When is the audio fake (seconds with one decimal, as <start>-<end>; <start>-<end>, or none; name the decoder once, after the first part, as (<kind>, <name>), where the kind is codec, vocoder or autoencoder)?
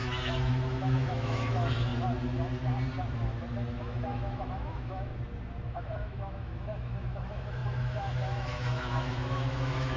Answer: 0.0-1.9 (autoencoder, DAC-VAE); 3.8-5.1; 5.7-10.0